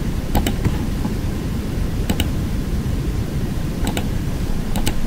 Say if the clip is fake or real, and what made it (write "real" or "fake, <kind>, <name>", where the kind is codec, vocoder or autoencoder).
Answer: fake, vocoder, BigVGAN v2